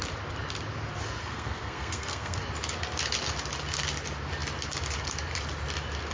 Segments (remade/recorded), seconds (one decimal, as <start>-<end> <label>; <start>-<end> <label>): 0.0-1.2 recorded; 1.2-2.4 remade; 2.4-6.1 recorded